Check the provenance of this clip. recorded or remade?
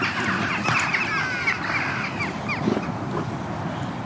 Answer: recorded